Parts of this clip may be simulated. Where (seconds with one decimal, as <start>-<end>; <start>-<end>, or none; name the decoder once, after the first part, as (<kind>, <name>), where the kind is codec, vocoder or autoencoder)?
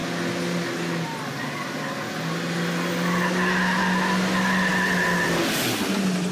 none